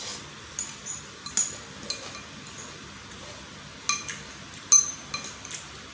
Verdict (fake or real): real